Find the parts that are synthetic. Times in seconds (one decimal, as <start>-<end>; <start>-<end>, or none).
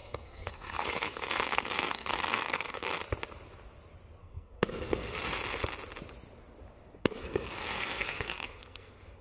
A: 0.0-3.0; 4.2-5.2; 7.0-9.2